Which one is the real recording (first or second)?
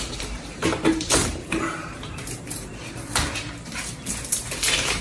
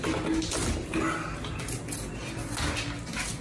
second